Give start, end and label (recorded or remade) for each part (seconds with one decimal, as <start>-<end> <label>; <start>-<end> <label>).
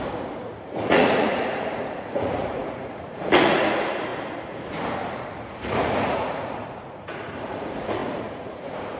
0.0-4.1 remade; 4.1-5.1 recorded; 5.1-9.0 remade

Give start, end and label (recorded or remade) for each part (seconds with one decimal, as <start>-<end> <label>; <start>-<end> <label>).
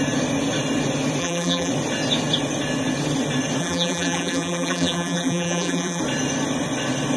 0.0-1.2 recorded; 1.2-1.7 remade; 1.7-3.6 recorded; 3.6-6.0 remade; 6.0-7.2 recorded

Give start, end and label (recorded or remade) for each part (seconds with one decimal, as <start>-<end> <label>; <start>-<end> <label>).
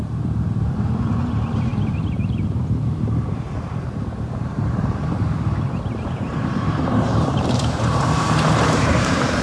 0.0-9.4 remade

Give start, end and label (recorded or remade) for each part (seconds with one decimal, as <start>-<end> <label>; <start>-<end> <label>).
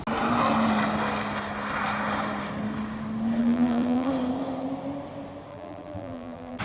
0.0-3.4 recorded; 3.4-4.1 remade; 4.1-5.5 recorded; 5.5-6.6 remade